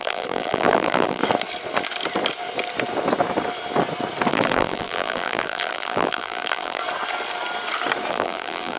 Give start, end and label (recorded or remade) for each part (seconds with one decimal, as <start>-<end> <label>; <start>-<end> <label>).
0.0-1.2 remade; 1.2-4.3 recorded; 4.3-6.8 remade; 6.8-8.1 recorded; 8.1-8.8 remade